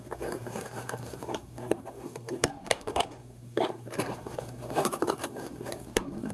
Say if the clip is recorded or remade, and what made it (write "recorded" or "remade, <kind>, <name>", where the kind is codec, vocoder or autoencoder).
remade, codec, SNAC